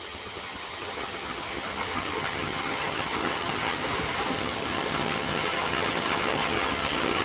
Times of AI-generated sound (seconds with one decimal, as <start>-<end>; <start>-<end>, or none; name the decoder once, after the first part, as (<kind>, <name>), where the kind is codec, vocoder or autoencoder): 0.0-3.8 (vocoder, HiFi-GAN); 4.3-7.2